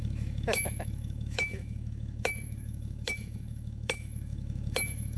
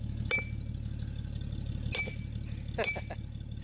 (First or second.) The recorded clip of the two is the second